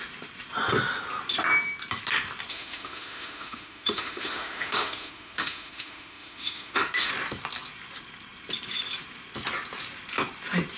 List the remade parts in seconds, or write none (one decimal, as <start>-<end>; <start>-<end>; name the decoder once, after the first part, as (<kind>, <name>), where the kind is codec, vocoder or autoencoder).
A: 2.5-7.1 (autoencoder, DAC-VAE)